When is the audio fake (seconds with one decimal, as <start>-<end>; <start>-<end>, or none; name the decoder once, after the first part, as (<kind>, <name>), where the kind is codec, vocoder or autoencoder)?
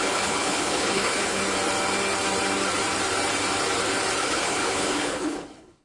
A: 0.0-1.4 (codec, HILCodec); 4.2-5.8